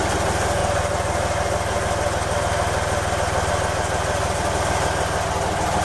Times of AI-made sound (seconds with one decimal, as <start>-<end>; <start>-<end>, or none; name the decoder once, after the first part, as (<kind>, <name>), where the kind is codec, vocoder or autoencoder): none